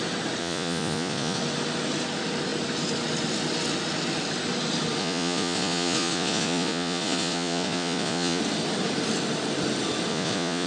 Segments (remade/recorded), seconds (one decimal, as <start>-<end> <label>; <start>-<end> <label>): 0.0-0.4 recorded; 0.4-1.4 remade; 1.4-5.0 recorded; 5.0-8.4 remade; 8.4-10.1 recorded; 10.1-10.7 remade